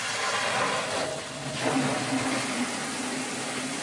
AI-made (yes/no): no